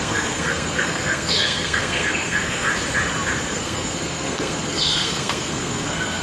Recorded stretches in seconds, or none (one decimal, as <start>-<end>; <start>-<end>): 2.7-3.5